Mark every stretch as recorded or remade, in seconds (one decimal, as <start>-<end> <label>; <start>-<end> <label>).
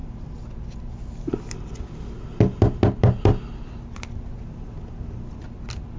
0.0-6.0 recorded